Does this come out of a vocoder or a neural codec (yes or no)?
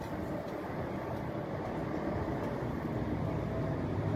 no